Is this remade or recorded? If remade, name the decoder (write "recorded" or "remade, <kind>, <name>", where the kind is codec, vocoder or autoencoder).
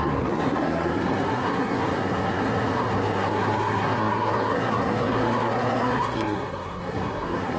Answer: remade, codec, SNAC